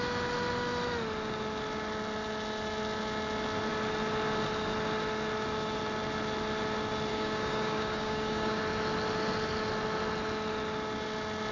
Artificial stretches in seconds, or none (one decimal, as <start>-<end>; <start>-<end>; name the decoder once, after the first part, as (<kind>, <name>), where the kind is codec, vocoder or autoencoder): 7.1-8.6 (codec, DAC)